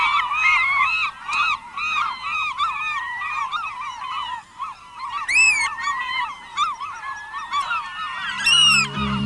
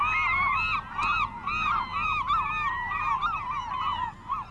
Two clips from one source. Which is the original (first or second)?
second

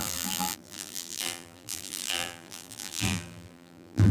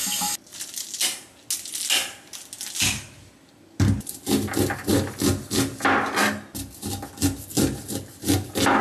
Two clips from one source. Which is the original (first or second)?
second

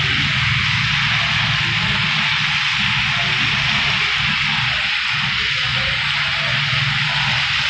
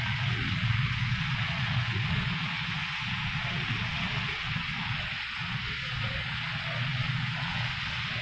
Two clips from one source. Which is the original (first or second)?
first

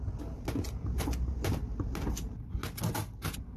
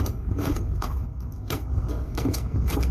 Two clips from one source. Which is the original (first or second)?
first